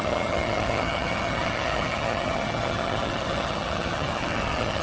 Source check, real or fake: fake